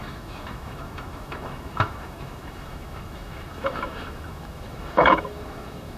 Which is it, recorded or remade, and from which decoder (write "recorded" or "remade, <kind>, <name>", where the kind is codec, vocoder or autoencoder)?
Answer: remade, autoencoder, DAC-VAE